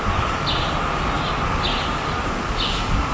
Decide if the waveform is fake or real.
real